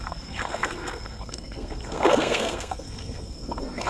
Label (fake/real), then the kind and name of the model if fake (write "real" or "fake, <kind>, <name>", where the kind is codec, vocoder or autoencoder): fake, codec, SNAC